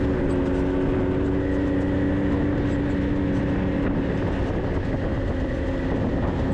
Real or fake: real